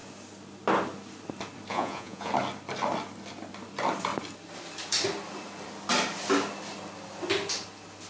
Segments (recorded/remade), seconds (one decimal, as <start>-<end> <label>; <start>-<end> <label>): 0.0-1.7 recorded; 1.7-2.3 remade; 2.3-8.1 recorded